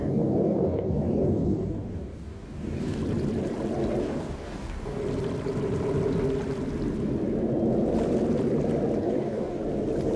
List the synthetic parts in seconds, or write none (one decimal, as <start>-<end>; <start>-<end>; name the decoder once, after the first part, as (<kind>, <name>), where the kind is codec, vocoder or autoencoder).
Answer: 0.0-3.0 (codec, DAC); 4.0-5.0; 9.0-9.6